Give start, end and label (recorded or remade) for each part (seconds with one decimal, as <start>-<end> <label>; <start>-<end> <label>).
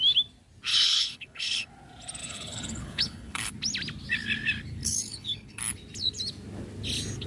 0.0-0.7 recorded; 0.7-1.7 remade; 1.7-2.2 recorded; 2.2-3.5 remade; 3.5-4.8 recorded; 4.8-5.6 remade; 5.6-7.3 recorded